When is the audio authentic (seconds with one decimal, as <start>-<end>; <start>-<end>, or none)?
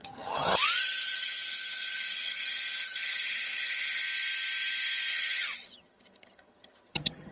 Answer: 4.0-5.1